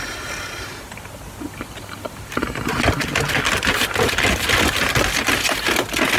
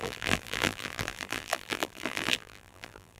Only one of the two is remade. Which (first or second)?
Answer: second